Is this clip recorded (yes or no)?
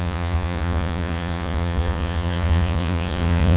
no